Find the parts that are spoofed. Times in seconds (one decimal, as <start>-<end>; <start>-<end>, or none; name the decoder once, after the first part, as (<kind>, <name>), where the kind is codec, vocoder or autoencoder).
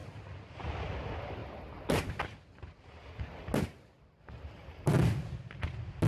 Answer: none